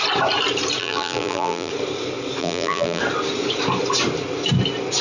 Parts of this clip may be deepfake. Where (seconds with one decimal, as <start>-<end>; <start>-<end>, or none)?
0.8-1.7; 2.4-3.0